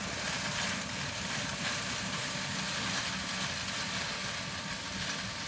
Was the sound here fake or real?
real